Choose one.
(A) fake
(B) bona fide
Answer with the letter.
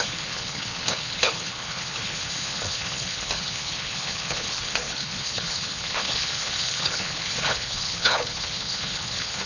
A